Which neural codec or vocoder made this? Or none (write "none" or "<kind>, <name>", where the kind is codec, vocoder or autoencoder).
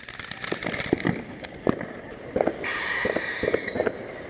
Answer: none